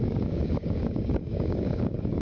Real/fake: fake